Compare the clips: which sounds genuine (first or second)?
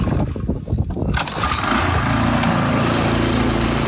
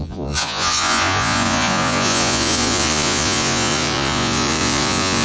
first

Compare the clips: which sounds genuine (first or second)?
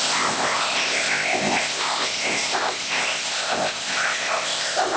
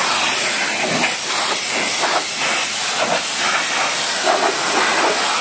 second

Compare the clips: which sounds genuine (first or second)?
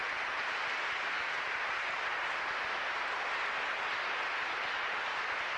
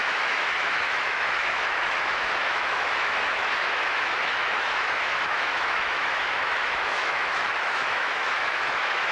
first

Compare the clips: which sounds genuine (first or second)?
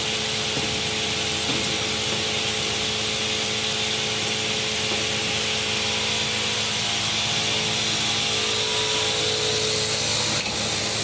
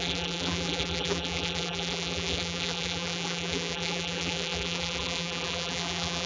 first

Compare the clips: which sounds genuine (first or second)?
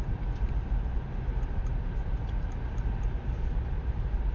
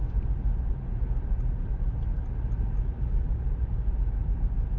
second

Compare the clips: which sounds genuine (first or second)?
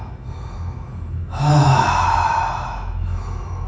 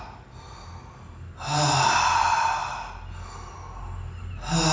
second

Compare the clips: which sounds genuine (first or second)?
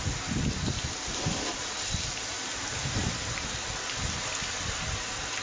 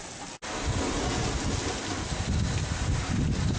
second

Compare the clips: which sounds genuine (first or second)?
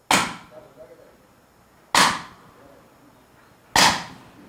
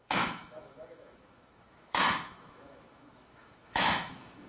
first